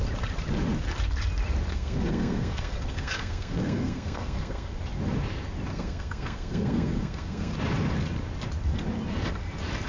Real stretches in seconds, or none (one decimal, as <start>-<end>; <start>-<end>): 0.0-1.7; 4.8-5.7; 7.5-9.9